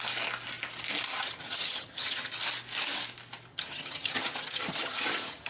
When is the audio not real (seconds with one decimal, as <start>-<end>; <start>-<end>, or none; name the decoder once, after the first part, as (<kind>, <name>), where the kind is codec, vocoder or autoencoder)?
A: 1.1-2.4 (vocoder, HiFi-GAN); 3.5-5.5